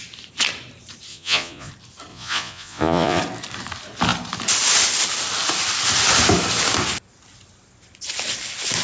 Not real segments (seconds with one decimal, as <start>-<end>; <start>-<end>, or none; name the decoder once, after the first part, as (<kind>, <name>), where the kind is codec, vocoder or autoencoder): 1.1-1.7 (vocoder, Vocos); 2.1-3.2